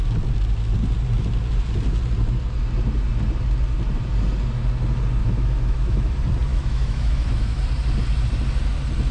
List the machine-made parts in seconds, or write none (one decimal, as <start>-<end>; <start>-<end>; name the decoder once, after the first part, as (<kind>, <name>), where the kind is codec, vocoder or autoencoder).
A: 5.2-6.1 (autoencoder, DAC-VAE); 6.5-7.6